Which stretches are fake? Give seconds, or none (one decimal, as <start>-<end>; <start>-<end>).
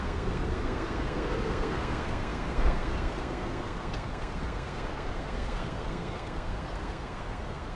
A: 0.0-7.8